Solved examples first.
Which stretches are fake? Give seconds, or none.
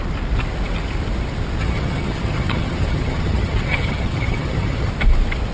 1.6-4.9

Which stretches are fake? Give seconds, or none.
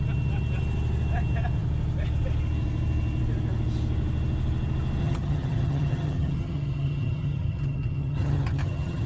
5.0-9.1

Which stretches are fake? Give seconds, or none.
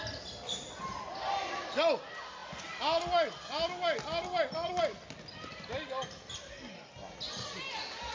none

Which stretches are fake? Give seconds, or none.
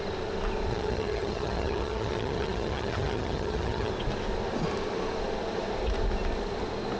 0.7-3.9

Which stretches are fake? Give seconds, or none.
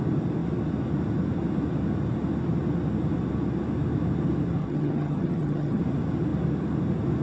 4.6-5.8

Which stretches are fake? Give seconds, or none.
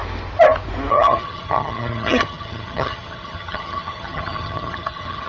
0.9-5.3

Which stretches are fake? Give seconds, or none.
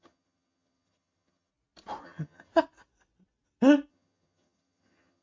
0.0-1.5; 2.0-2.5; 3.9-5.2